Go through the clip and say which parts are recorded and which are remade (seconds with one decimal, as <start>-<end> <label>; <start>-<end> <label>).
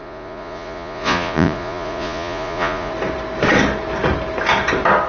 0.0-2.9 remade; 2.9-5.1 recorded